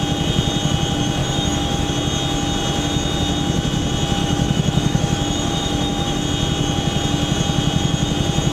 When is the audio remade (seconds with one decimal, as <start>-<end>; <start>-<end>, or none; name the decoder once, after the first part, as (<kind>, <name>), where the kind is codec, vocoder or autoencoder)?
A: 1.2-1.9 (autoencoder, DAC-VAE); 4.2-6.2